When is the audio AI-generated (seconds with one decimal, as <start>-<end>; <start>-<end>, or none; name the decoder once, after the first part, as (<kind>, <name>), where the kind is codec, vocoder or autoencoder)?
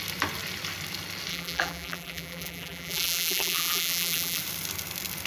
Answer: 1.3-4.4 (vocoder, BigVGAN v2)